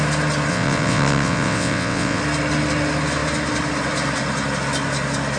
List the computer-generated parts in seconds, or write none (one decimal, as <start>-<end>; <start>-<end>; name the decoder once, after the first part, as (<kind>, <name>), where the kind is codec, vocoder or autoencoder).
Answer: 0.5-2.2 (vocoder, WaveNeXt)